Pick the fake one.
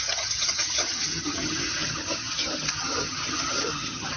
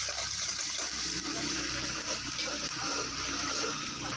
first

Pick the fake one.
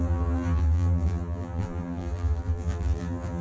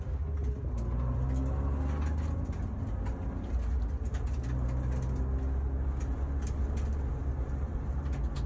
first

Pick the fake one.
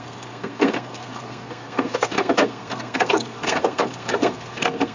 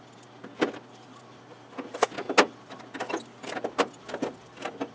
first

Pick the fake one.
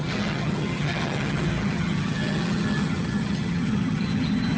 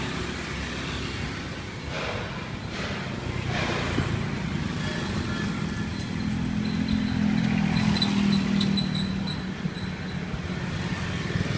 first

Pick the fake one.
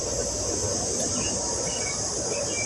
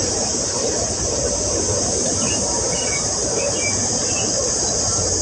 second